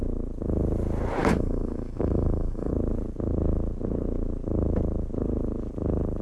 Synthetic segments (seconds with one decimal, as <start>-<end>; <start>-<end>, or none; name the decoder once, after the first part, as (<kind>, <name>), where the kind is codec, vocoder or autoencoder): 1.2-2.7 (codec, DAC)